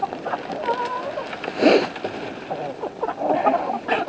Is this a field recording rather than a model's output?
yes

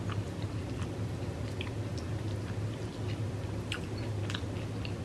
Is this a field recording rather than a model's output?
yes